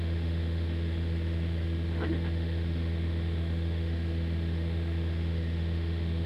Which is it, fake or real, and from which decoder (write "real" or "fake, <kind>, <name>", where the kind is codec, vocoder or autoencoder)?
fake, autoencoder, DAC-VAE